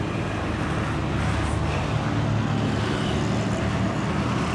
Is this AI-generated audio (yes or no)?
no